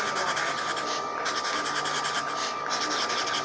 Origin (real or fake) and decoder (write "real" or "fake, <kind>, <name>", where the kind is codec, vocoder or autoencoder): real